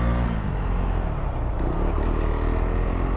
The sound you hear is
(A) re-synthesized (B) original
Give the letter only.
B